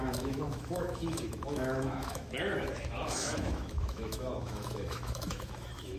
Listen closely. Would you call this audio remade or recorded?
remade